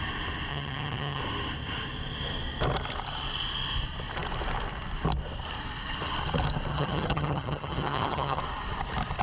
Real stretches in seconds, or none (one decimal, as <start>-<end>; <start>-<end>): 0.0-0.5; 1.2-6.7; 8.4-9.2